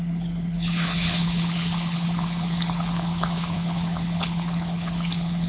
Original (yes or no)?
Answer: no